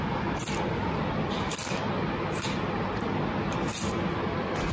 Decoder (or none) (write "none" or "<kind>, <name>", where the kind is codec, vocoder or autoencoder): none